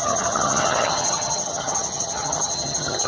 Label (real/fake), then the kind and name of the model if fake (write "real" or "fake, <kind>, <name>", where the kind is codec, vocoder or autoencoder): fake, vocoder, HiFi-GAN